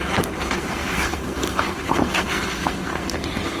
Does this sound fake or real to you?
fake